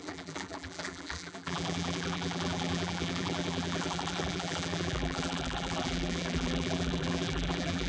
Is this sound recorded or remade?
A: remade